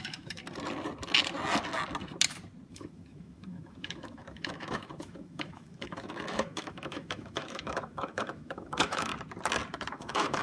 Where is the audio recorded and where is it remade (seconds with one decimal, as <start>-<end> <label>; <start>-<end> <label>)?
0.0-0.4 remade; 0.4-2.7 recorded; 2.7-9.1 remade; 9.1-9.9 recorded; 9.9-10.4 remade